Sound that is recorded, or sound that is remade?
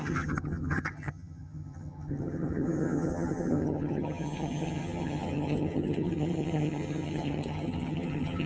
remade